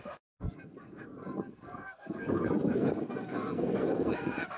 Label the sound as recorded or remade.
remade